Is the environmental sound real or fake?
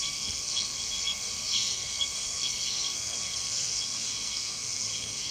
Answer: fake